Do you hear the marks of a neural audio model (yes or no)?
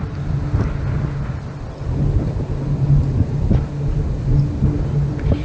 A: no